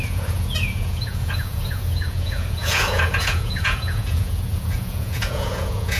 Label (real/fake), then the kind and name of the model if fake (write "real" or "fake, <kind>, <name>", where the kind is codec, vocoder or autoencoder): fake, vocoder, Vocos